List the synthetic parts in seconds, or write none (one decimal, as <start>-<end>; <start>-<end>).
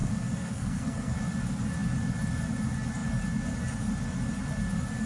0.0-1.2